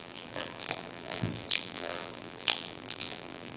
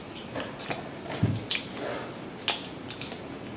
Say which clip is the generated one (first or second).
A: first